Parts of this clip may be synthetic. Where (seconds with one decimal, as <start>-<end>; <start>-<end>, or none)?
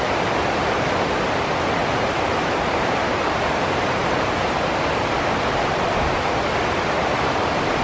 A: 1.8-6.3